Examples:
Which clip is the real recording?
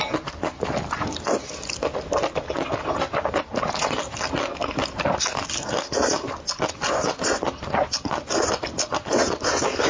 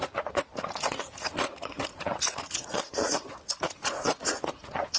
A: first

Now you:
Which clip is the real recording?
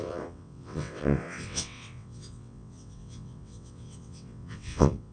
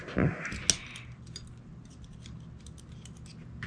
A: second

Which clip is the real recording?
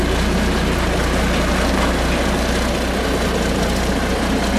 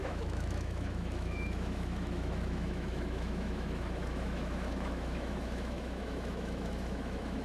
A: first